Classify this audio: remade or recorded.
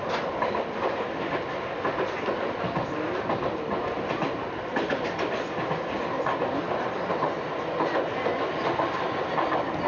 recorded